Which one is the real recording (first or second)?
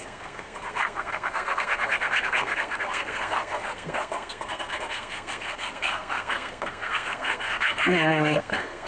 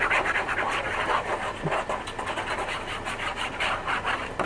second